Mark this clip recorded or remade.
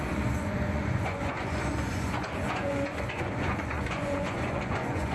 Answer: remade